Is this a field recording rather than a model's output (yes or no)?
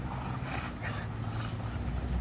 yes